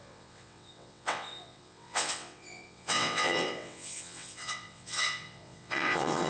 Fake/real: fake